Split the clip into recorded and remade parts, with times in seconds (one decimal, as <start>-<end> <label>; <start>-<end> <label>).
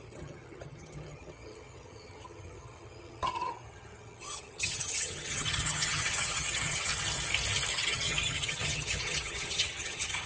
0.0-6.9 remade; 6.9-7.7 recorded; 7.7-10.3 remade